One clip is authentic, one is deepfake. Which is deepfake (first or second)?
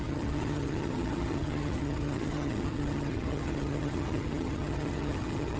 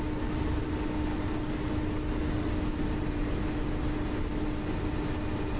first